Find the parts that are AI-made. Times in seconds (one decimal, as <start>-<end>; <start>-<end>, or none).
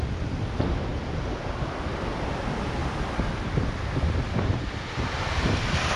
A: none